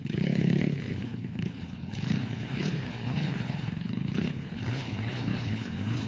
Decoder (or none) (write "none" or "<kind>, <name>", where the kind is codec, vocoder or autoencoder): codec, HILCodec